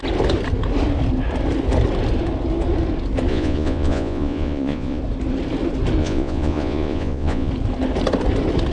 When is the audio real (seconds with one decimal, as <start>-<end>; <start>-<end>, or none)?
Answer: 0.0-3.3; 5.0-6.0; 7.5-8.7